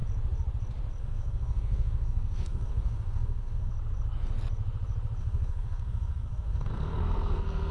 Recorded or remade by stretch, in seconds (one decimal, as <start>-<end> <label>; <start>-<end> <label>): 0.0-1.0 recorded; 1.0-3.7 remade; 3.7-5.2 recorded; 5.2-7.7 remade